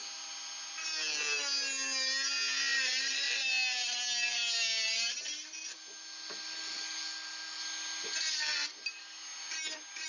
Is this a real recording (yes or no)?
yes